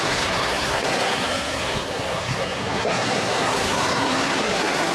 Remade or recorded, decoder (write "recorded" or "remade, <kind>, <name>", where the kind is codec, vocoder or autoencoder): remade, codec, SNAC